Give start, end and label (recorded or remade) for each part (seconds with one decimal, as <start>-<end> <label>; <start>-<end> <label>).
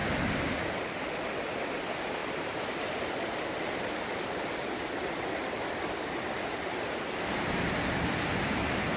0.0-9.0 recorded